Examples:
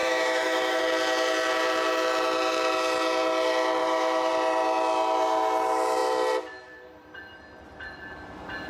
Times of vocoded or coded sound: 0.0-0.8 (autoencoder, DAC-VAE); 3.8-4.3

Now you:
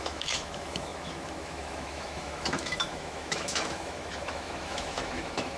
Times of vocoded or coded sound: 0.0-5.6 (autoencoder, DAC-VAE)

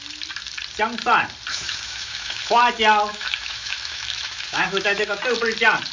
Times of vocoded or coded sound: 1.5-2.6 (autoencoder, DAC-VAE); 3.1-5.2